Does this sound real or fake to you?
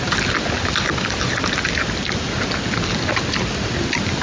real